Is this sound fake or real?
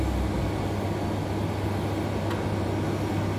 real